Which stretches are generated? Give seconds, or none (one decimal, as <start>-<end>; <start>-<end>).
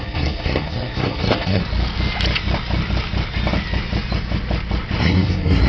0.0-1.6; 5.0-5.7